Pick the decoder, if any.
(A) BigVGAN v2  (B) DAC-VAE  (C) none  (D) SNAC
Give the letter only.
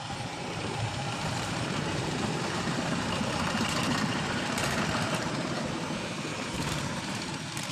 A